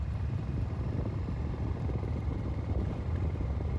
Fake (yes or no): yes